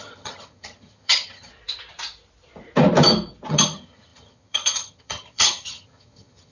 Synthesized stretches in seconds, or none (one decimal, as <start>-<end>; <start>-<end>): 0.0-1.5; 3.5-6.5